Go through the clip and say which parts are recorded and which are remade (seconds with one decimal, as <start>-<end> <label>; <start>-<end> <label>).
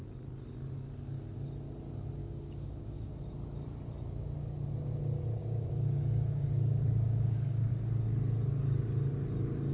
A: 0.0-2.2 recorded; 2.2-3.1 remade; 3.1-5.4 recorded; 5.4-7.7 remade; 7.7-9.7 recorded